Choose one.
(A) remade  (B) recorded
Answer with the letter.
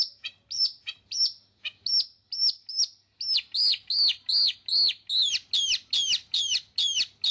B